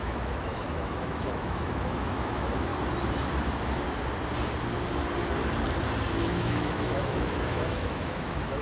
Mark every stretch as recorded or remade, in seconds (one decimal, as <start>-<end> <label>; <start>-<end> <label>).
0.0-2.7 remade; 2.7-6.1 recorded; 6.1-8.6 remade